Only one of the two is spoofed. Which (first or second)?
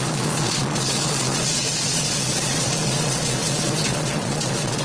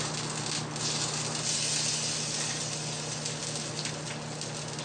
first